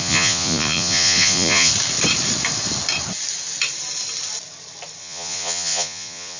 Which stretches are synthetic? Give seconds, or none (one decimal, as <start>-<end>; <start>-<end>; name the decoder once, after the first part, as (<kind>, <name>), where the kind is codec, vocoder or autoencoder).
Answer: 0.0-1.7 (vocoder, Vocos); 5.0-6.4